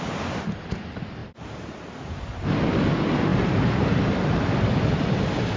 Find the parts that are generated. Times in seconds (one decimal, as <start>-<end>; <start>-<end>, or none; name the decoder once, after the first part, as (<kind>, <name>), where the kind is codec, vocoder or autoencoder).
1.2-2.1 (vocoder, BigVGAN v2); 3.3-4.6